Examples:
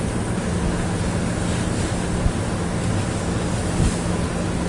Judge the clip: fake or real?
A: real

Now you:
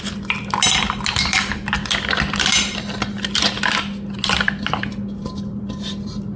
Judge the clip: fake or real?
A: real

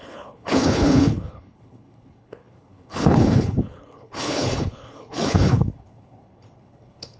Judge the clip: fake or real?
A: fake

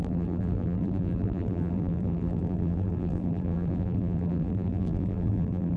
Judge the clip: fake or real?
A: fake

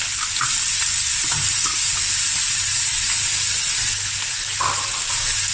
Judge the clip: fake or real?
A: real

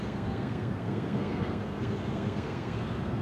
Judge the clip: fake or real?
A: fake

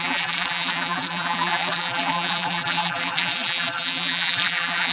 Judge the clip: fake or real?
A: fake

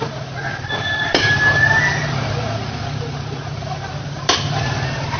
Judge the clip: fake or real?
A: real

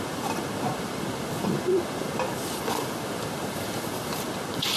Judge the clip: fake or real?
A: real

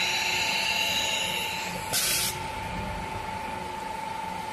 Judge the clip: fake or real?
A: real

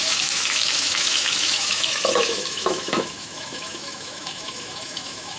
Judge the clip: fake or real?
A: fake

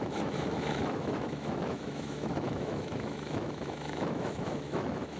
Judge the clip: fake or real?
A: fake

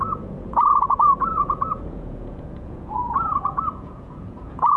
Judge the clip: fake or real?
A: fake